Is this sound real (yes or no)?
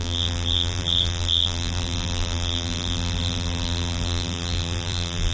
no